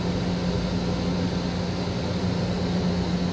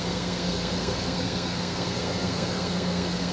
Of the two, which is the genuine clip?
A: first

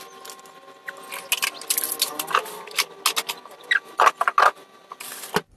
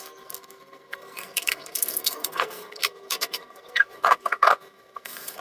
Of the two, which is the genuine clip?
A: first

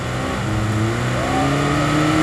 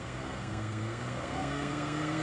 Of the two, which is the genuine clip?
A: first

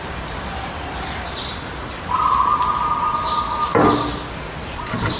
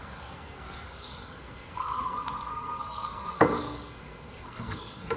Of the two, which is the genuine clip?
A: first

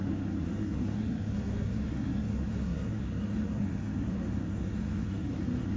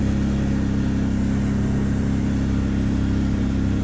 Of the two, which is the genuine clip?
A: second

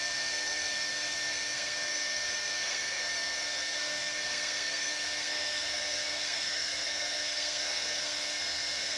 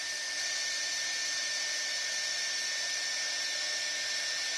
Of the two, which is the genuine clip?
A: second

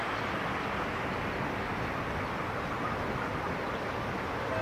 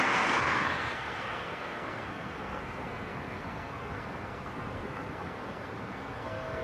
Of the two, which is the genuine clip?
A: first